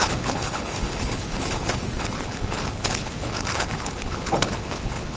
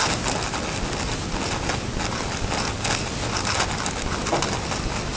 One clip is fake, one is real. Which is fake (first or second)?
first